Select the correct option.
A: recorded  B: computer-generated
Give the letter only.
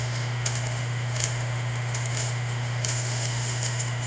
B